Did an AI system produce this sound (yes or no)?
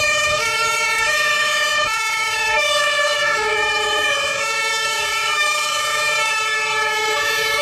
yes